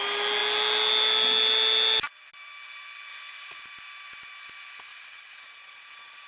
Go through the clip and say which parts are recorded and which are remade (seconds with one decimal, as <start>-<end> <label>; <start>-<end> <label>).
0.0-3.1 recorded; 3.1-3.6 remade; 3.6-4.9 recorded; 4.9-6.3 remade